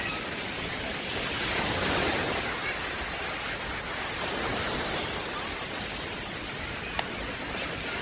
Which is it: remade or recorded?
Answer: remade